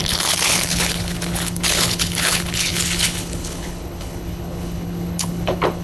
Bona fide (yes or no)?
no